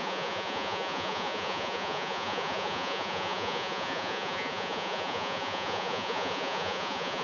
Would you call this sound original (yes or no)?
no